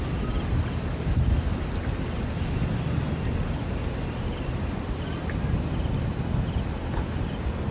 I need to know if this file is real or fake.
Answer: real